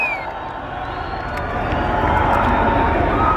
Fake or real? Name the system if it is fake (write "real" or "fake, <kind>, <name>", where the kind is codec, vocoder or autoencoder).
real